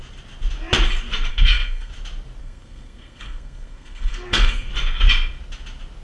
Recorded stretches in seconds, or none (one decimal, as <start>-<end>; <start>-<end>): 0.0-1.3; 1.9-2.4; 4.7-6.0